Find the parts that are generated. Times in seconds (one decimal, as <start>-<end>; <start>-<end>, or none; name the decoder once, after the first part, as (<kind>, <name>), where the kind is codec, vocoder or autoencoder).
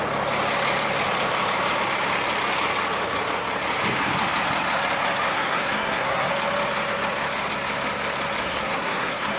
5.3-6.3 (codec, SNAC); 8.4-9.4